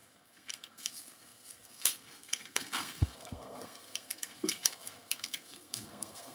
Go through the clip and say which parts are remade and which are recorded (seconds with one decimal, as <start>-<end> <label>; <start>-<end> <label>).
0.0-6.3 remade